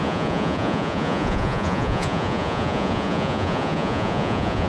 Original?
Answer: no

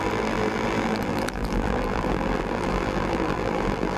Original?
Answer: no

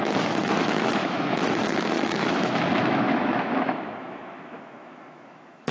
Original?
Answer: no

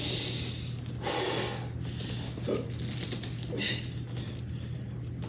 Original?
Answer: yes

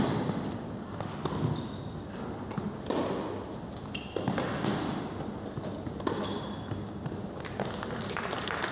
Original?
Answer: yes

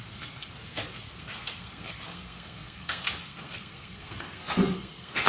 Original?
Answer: no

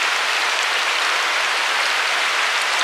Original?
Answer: yes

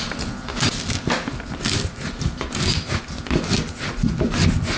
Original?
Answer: yes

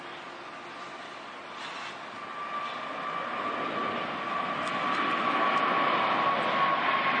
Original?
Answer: yes